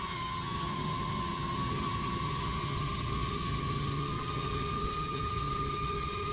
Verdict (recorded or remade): remade